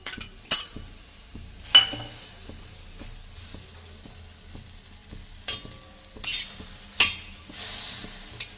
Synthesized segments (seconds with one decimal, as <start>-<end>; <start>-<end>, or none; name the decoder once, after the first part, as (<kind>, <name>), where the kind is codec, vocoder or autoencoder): none